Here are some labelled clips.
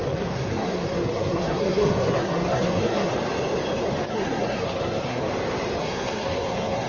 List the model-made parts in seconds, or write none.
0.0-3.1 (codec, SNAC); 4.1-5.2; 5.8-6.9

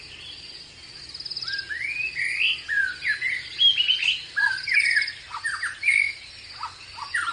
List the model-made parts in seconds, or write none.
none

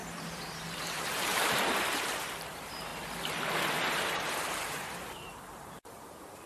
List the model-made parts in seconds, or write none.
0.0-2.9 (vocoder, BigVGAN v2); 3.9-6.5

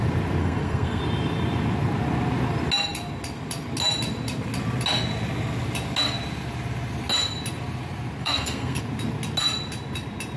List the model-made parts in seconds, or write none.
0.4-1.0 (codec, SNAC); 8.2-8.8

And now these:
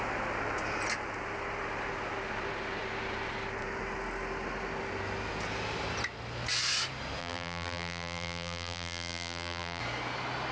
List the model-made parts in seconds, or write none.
7.2-9.8 (vocoder, BigVGAN v2)